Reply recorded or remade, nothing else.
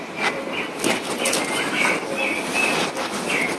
recorded